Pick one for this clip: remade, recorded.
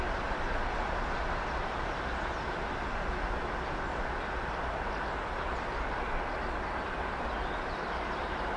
recorded